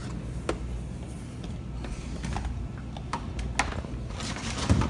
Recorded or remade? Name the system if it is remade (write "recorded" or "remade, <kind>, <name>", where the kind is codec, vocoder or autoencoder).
recorded